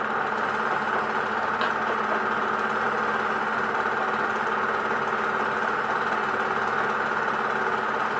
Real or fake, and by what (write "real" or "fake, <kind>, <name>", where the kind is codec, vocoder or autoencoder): real